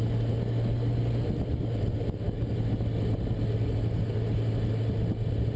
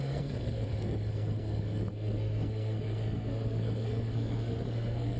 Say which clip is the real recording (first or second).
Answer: first